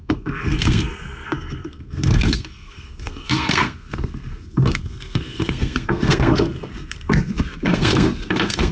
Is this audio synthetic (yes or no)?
yes